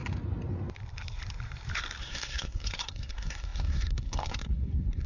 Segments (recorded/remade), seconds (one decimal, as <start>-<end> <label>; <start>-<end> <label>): 0.0-2.0 recorded; 2.0-5.1 remade